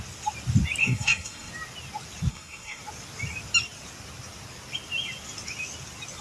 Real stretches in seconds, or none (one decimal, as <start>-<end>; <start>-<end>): 0.0-0.8; 1.5-2.3; 2.8-6.2